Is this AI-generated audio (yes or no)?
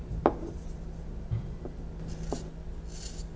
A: no